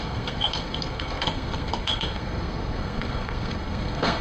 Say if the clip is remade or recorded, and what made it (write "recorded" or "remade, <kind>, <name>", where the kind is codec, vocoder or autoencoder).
remade, codec, SNAC